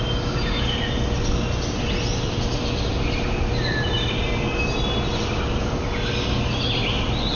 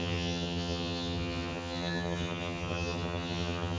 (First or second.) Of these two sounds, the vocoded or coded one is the second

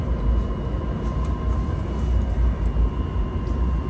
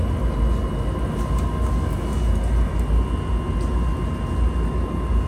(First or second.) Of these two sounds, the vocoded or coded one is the first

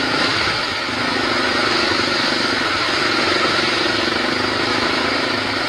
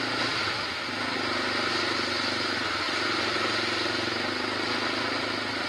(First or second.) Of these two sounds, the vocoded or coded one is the first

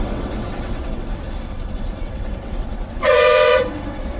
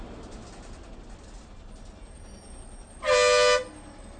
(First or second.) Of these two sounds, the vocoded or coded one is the first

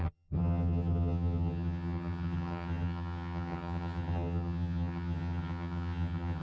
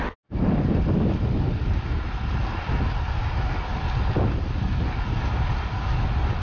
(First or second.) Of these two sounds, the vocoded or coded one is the first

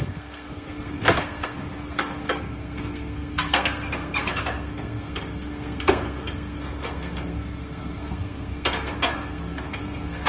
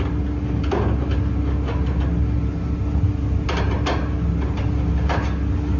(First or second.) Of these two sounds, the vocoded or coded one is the first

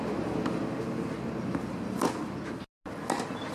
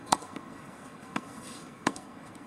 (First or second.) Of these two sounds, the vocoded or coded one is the second